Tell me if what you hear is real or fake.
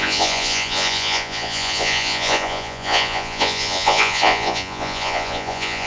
fake